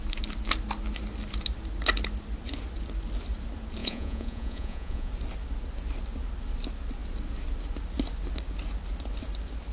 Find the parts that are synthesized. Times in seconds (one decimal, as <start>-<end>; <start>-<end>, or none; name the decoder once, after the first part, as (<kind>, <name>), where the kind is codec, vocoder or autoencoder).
3.8-5.1 (vocoder, Vocos)